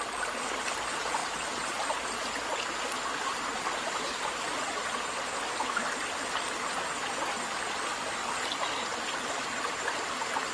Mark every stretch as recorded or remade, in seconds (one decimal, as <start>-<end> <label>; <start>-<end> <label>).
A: 0.0-3.3 recorded; 3.3-4.6 remade; 4.6-10.5 recorded